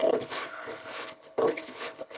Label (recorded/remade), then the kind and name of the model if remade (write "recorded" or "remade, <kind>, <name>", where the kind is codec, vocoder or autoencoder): remade, codec, HILCodec